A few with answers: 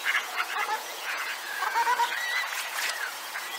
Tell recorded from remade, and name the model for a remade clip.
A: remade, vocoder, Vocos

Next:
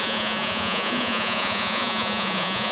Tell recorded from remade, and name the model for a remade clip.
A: remade, vocoder, Vocos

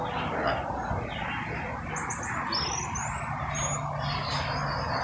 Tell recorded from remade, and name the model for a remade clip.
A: recorded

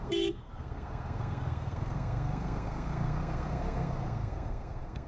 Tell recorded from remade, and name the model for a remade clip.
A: remade, codec, SNAC